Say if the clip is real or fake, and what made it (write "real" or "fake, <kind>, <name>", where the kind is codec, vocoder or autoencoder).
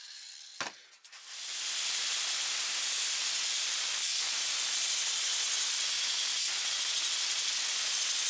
real